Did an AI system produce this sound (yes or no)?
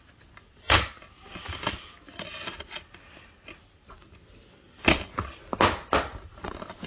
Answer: no